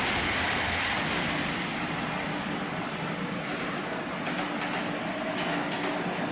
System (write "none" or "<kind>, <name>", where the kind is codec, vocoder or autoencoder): none